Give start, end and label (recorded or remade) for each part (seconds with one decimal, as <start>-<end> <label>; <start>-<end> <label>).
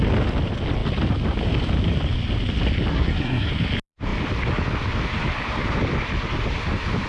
0.0-2.9 recorded; 2.9-3.5 remade; 3.5-7.1 recorded